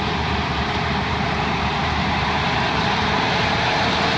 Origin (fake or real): fake